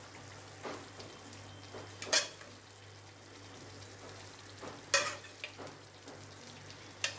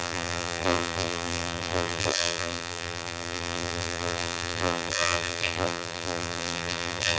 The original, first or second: first